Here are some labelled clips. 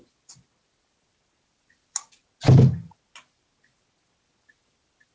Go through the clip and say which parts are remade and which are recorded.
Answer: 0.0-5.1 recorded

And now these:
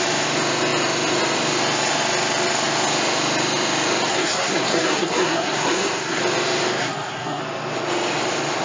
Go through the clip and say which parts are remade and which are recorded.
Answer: 0.0-4.1 recorded; 4.1-6.2 remade; 6.2-6.8 recorded; 6.8-7.4 remade; 7.4-8.6 recorded

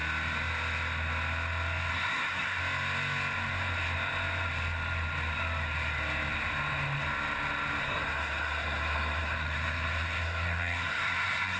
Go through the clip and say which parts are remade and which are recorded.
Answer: 0.0-1.9 recorded; 1.9-2.6 remade; 2.6-7.8 recorded; 7.8-11.6 remade

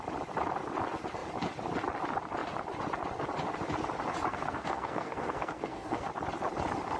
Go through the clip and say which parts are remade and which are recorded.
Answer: 0.0-4.3 recorded; 4.3-6.1 remade; 6.1-7.0 recorded

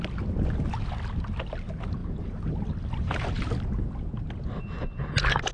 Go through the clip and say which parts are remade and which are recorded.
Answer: 0.0-5.5 recorded